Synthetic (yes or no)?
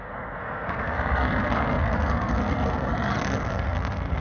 yes